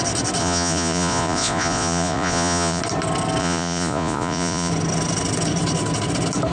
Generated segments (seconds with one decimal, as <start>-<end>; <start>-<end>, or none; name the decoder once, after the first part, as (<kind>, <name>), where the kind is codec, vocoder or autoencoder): 0.4-2.8 (vocoder, Vocos); 3.4-4.7